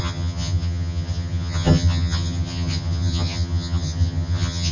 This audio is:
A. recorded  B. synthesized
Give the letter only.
B